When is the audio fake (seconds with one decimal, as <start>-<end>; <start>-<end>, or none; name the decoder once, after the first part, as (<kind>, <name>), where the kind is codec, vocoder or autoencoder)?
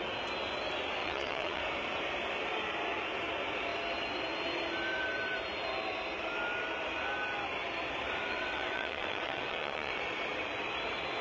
1.0-1.6 (vocoder, WaveNeXt); 8.3-10.0